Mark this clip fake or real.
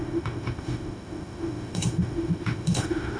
fake